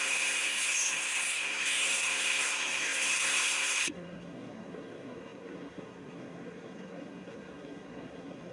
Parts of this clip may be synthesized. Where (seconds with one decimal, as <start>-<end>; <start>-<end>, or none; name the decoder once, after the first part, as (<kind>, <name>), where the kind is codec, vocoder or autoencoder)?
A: 0.0-8.5 (codec, SNAC)

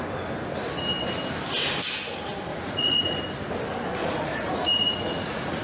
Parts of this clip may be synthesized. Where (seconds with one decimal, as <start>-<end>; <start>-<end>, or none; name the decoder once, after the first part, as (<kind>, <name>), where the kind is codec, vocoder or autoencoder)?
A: 2.5-3.2 (vocoder, Vocos); 4.0-5.6

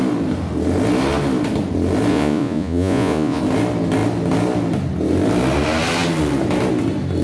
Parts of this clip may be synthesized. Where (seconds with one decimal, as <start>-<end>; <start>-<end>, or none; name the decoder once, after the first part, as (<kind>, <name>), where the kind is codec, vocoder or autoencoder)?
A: 2.1-3.4 (vocoder, Vocos)